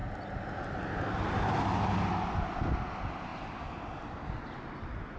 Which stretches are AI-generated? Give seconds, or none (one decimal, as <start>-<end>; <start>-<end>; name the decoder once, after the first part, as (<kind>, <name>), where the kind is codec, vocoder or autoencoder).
none